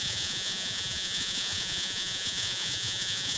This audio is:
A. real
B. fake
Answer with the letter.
B